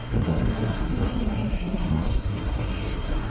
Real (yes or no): no